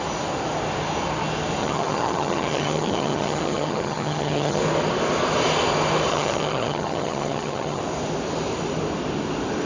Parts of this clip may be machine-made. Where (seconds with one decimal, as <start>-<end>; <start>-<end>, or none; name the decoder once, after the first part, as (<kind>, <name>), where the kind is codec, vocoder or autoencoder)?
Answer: 1.6-4.6 (vocoder, HiFi-GAN); 6.1-7.8